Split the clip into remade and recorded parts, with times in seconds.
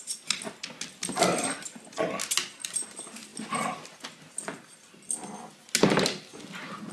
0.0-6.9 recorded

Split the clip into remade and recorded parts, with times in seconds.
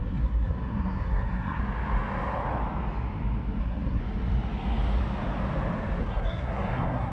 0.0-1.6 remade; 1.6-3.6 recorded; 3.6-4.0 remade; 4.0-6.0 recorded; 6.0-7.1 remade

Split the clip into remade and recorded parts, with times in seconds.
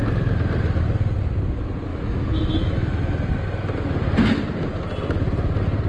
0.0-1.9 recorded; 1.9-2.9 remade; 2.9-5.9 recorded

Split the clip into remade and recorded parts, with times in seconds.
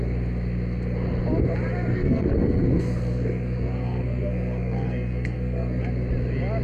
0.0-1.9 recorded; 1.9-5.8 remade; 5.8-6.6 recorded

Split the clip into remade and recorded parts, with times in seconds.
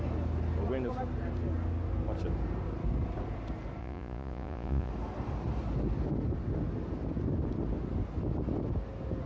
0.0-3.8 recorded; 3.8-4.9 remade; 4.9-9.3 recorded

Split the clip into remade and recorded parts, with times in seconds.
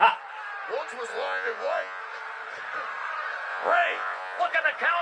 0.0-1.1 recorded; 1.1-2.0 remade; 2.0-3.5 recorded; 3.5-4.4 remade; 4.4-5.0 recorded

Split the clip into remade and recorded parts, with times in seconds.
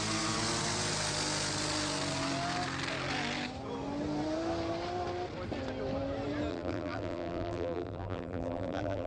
0.0-6.5 recorded; 6.5-9.1 remade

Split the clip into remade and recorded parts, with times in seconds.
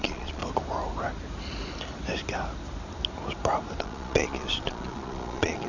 0.0-0.4 remade; 0.4-3.8 recorded; 3.8-5.7 remade